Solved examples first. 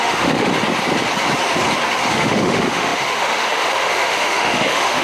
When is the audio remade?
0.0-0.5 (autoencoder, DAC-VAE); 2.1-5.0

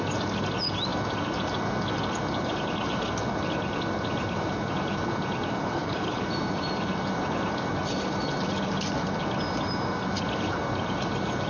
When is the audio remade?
5.6-6.2 (codec, HILCodec)